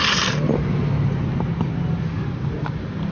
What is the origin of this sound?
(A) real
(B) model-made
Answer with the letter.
A